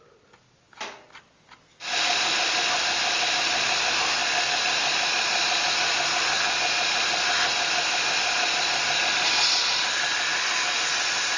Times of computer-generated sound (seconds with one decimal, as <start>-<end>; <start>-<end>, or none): none